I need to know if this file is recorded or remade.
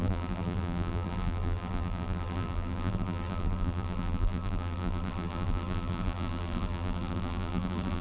remade